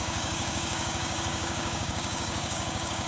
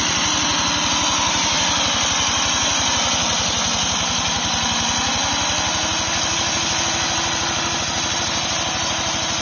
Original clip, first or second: second